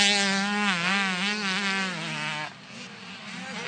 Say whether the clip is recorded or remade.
recorded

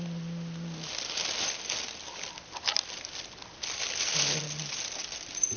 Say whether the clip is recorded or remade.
recorded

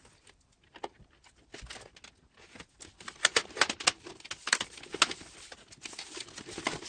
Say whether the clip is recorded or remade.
recorded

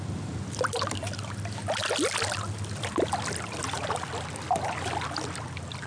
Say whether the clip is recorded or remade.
recorded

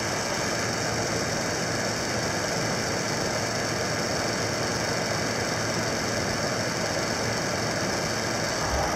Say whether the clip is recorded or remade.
recorded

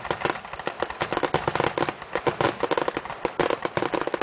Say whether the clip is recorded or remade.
recorded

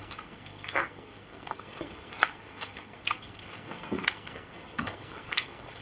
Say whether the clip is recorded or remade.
remade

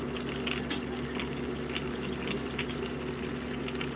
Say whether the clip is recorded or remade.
recorded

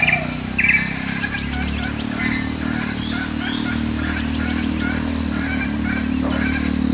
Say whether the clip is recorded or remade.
recorded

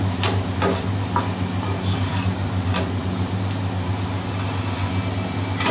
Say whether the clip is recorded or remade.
recorded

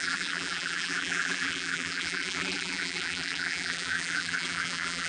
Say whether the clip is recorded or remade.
remade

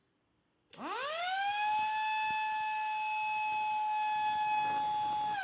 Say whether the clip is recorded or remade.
recorded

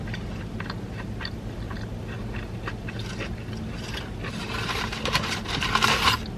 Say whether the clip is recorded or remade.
remade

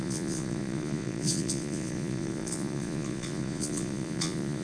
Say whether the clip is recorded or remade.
remade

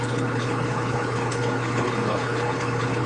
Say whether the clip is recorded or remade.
remade